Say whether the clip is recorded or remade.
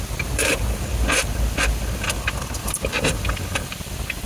recorded